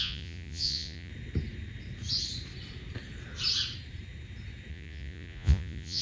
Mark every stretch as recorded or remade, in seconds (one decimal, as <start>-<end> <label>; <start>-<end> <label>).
0.0-1.1 remade; 1.1-4.7 recorded; 4.7-6.0 remade